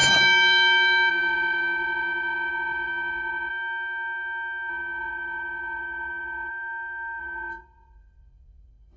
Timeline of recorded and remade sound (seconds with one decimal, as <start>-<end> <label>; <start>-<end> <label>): 0.0-1.1 recorded; 1.1-3.5 remade; 3.5-4.7 recorded; 4.7-6.5 remade; 6.5-7.2 recorded; 7.2-9.0 remade